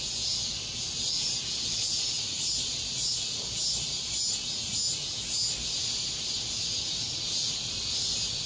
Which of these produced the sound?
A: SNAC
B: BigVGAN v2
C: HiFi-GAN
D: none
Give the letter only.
D